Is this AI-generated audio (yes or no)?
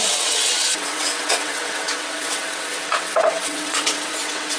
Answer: yes